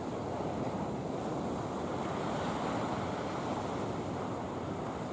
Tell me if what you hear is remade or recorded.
recorded